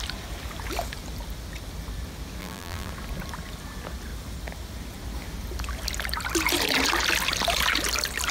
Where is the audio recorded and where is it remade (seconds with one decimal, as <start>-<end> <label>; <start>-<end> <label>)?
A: 0.0-2.4 recorded; 2.4-2.9 remade; 2.9-8.3 recorded